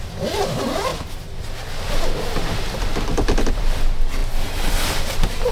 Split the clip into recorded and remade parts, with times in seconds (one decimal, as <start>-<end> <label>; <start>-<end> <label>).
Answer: 0.0-5.5 recorded